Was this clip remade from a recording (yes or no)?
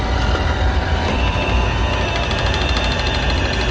yes